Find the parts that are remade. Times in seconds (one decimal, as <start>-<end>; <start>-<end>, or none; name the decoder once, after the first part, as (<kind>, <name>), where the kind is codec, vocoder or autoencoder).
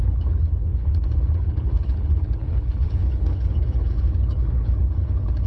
0.0-5.5 (codec, HILCodec)